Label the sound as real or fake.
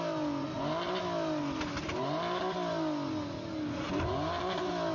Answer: real